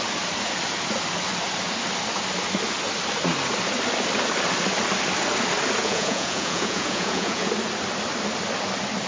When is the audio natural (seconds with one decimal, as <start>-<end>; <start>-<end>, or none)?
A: 0.0-5.8; 7.5-9.1